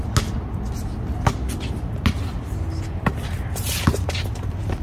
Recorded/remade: recorded